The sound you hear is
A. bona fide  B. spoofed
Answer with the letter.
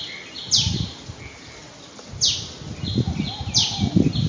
A